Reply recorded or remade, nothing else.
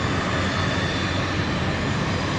recorded